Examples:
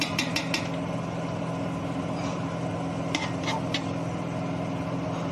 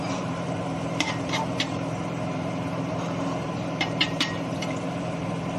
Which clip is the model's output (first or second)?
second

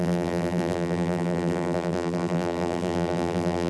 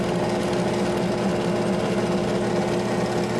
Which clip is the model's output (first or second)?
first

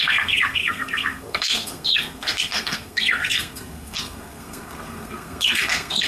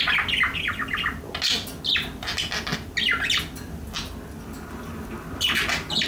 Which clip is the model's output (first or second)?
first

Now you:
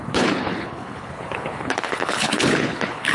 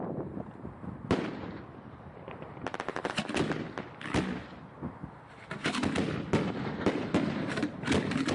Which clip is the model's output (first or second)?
first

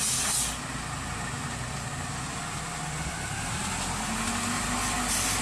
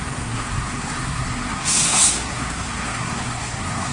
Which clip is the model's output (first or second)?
second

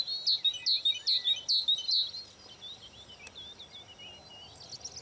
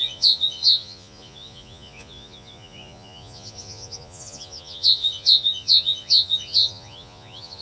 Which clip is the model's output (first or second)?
second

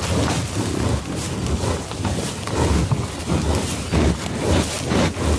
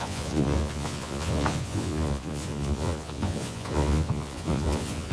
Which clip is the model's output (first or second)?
second